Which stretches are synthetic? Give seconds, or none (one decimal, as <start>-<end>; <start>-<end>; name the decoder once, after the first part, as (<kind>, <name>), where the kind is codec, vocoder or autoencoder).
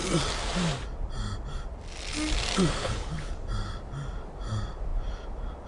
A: 2.8-3.3 (codec, HILCodec)